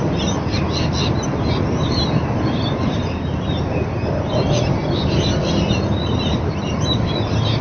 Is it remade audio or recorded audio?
recorded